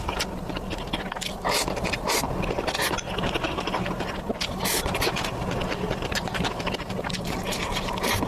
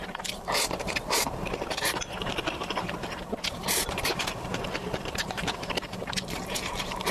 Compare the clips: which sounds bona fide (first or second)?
first